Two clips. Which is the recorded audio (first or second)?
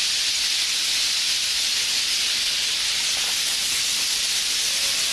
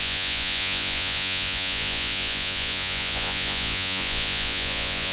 first